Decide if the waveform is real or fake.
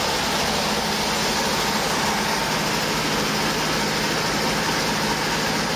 real